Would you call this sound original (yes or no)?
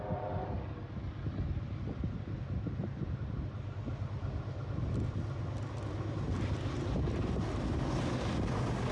yes